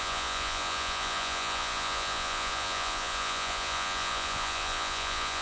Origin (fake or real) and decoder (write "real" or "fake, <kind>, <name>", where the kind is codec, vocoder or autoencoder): fake, vocoder, Vocos